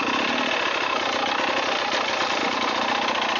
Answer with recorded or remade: recorded